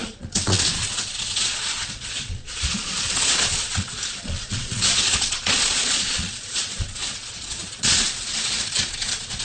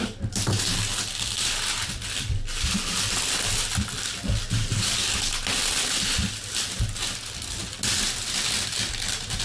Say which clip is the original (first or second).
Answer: second